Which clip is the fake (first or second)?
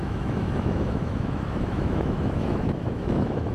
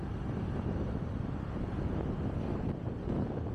first